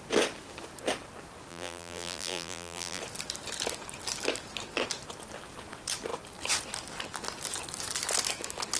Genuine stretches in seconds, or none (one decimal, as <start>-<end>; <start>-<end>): 0.0-1.5; 3.0-8.8